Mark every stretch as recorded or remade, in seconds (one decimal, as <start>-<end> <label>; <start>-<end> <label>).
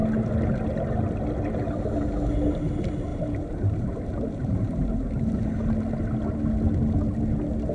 0.0-3.1 recorded; 3.1-5.2 remade; 5.2-7.7 recorded